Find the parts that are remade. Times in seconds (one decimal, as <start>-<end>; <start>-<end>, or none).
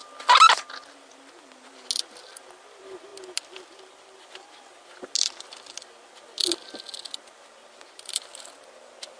none